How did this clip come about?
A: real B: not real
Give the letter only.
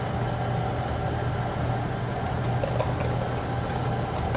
A